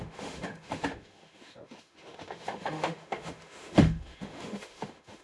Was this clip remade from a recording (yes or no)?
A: yes